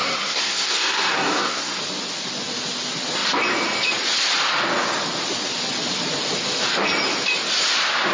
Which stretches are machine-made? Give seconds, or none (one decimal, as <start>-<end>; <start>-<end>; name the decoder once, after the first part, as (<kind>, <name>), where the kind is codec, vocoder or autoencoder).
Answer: 0.0-1.8 (codec, SNAC)